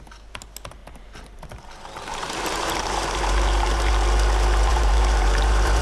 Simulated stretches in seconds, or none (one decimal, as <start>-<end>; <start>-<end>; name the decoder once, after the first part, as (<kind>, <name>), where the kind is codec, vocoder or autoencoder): 0.8-3.9 (vocoder, BigVGAN v2); 4.7-5.8